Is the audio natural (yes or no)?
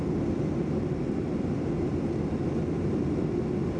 yes